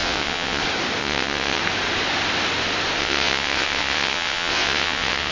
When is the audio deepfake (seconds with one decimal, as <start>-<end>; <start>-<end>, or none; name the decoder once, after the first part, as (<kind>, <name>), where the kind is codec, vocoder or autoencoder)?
0.0-0.6 (vocoder, WaveNeXt); 1.0-1.6; 3.0-5.3